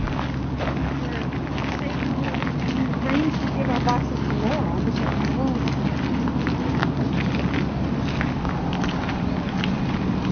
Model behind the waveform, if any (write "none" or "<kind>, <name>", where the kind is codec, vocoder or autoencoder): none